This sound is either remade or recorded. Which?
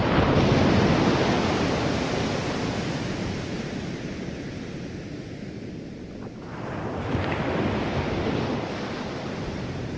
recorded